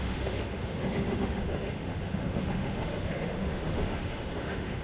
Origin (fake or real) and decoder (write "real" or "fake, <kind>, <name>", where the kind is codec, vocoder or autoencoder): fake, autoencoder, DAC-VAE